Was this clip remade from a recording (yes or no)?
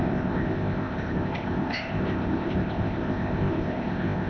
yes